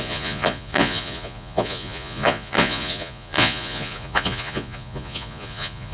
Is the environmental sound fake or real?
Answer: fake